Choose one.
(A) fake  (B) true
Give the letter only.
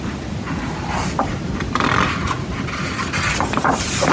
B